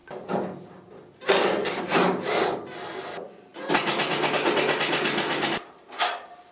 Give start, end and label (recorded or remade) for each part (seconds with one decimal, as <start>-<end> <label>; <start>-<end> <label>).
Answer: 0.0-6.5 recorded